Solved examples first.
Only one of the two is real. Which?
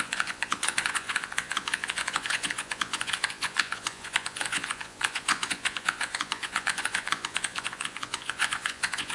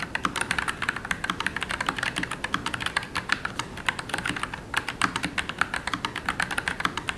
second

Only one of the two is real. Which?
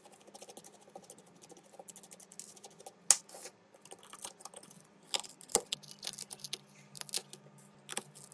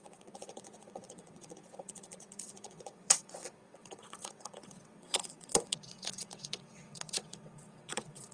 first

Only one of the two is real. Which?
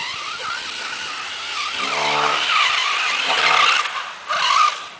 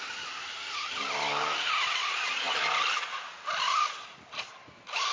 first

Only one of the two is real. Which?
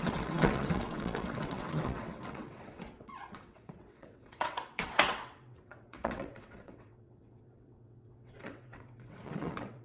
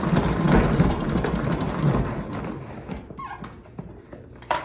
second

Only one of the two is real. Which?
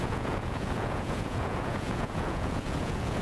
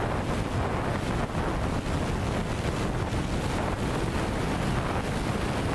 second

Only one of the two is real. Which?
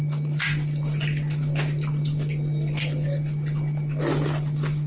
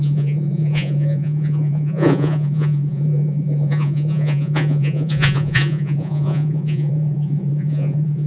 first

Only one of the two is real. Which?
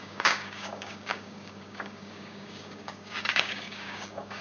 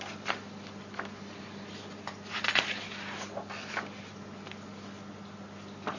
second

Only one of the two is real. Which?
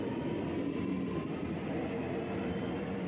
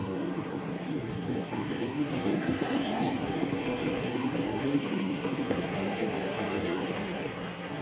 first